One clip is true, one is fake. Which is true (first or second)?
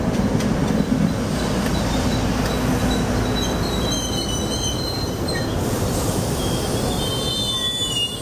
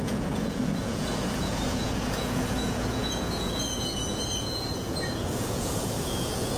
first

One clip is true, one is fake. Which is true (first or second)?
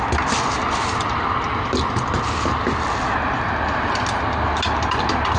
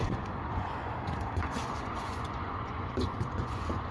first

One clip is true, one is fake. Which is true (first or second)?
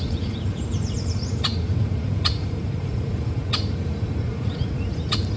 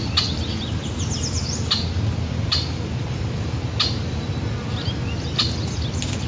second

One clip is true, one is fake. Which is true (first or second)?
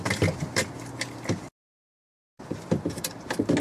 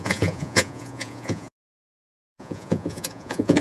first